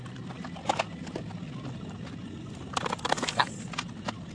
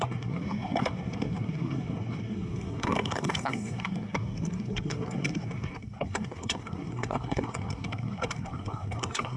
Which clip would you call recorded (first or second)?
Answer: first